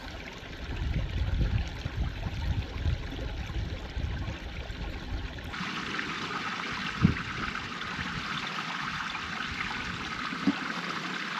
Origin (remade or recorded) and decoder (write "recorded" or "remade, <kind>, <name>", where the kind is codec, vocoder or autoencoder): recorded